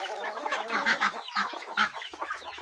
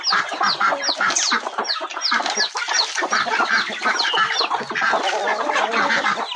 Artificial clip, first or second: first